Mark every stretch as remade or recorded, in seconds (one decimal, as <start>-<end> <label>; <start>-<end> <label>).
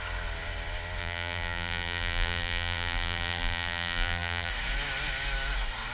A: 0.0-1.0 recorded; 1.0-4.5 remade; 4.5-5.9 recorded